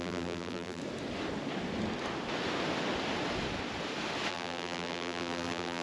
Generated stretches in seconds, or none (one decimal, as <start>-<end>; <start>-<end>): 0.0-0.8; 4.3-5.8